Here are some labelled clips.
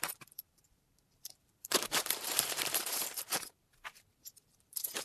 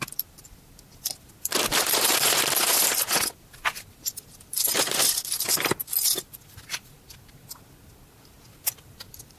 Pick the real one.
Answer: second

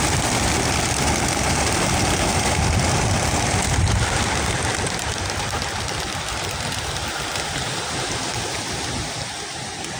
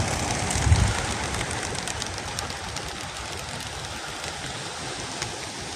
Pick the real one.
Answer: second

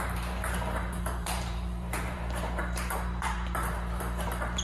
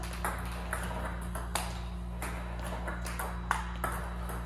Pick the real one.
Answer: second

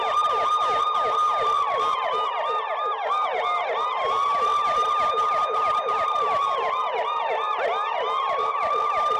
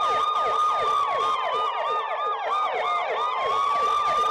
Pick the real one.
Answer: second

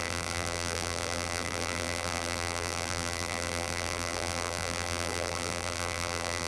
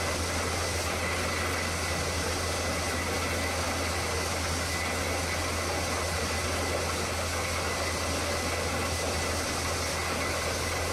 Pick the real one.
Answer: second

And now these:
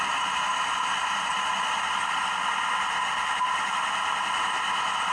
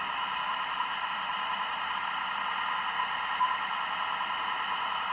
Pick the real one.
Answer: first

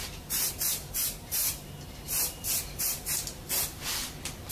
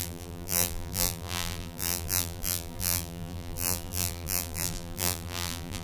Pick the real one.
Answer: first